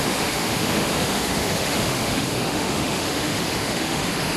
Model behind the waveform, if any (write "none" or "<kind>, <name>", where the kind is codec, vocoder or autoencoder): autoencoder, DAC-VAE